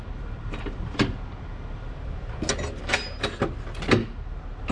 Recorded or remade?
recorded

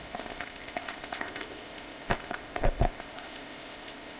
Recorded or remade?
remade